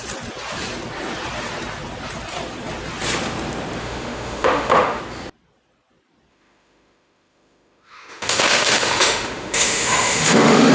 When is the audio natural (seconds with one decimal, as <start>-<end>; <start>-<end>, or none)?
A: 0.0-3.8; 5.0-6.3